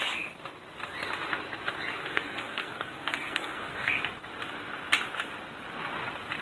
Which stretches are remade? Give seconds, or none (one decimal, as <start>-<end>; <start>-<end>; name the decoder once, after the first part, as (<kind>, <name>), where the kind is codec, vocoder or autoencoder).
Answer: 2.0-4.0 (codec, SNAC)